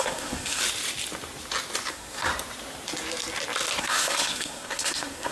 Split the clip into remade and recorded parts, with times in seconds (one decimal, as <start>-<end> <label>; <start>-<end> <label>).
0.0-0.6 remade; 0.6-1.9 recorded; 1.9-2.3 remade; 2.3-3.8 recorded; 3.8-5.3 remade